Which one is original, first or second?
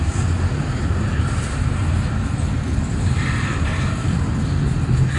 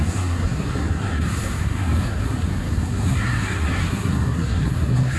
first